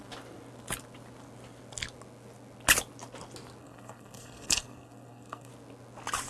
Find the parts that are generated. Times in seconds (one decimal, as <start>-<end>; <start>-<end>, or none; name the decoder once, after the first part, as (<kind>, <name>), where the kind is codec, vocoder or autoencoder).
3.6-5.5 (codec, SNAC)